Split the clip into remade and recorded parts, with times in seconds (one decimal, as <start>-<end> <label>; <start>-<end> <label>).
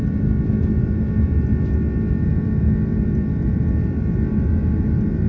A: 0.0-1.0 remade; 1.0-2.3 recorded; 2.3-3.6 remade; 3.6-5.3 recorded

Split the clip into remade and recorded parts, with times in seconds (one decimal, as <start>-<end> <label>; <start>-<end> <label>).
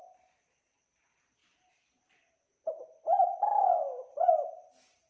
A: 0.0-5.1 remade